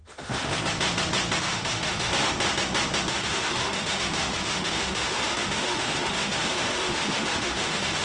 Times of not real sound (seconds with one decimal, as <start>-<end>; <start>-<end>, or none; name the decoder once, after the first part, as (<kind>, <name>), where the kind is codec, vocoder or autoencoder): 0.0-0.5 (autoencoder, DAC-VAE); 1.4-2.1; 3.1-8.0